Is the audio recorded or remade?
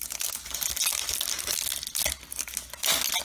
recorded